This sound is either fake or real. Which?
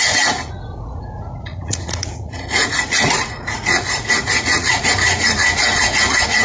fake